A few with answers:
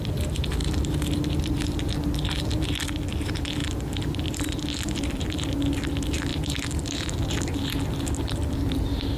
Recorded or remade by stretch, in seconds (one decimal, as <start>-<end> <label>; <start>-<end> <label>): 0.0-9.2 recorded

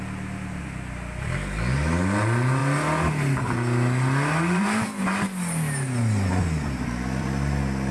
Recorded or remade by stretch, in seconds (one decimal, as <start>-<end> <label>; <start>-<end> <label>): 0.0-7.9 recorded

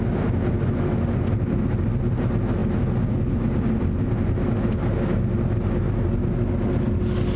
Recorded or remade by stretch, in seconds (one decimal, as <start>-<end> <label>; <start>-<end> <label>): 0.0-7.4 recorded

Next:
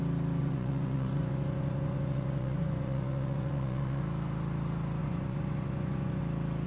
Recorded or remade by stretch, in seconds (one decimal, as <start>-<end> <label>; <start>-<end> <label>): 0.0-0.4 recorded; 0.4-4.0 remade; 4.0-5.0 recorded; 5.0-6.2 remade; 6.2-6.7 recorded

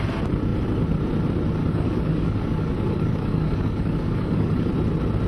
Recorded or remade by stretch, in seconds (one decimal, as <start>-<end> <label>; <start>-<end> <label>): 0.0-1.6 recorded; 1.6-4.7 remade; 4.7-5.3 recorded

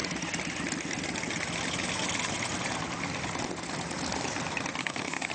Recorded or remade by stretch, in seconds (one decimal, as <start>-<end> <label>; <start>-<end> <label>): 0.0-4.8 recorded; 4.8-5.3 remade

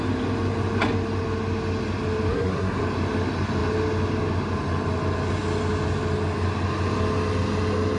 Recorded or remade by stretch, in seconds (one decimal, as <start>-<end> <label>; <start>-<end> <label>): 0.0-2.3 recorded; 2.3-2.8 remade; 2.8-8.0 recorded

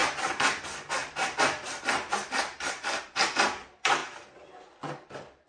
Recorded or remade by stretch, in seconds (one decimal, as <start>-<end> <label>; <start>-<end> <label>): 0.0-5.5 remade